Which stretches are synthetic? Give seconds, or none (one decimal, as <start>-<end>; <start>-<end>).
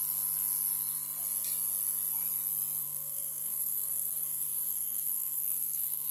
2.8-6.1